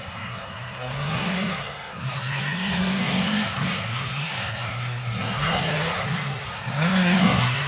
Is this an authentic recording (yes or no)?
no